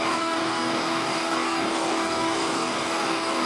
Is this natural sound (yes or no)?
no